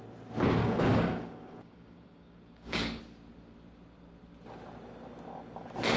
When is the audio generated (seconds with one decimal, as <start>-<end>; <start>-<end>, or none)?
0.6-3.0